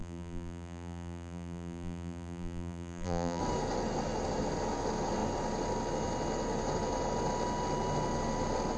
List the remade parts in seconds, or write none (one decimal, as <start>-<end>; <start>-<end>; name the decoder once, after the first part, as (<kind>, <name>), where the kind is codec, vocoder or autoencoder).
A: 0.0-3.4 (vocoder, BigVGAN v2)